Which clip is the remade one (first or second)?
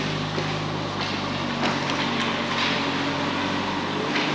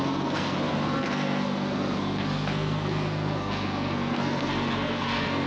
second